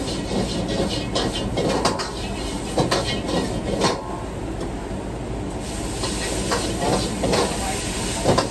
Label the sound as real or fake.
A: real